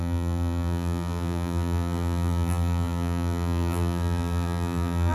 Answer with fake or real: fake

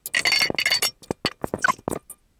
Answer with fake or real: real